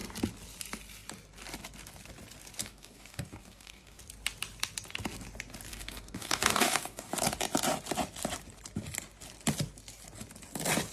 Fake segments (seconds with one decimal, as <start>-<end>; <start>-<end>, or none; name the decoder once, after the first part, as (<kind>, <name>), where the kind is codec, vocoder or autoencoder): 2.6-4.0 (codec, DAC); 5.7-7.1